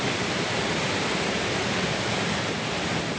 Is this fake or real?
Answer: fake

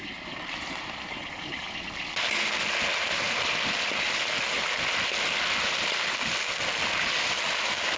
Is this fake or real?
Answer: real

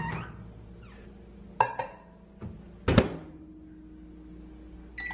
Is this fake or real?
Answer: real